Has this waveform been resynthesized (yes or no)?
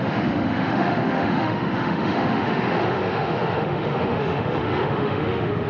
yes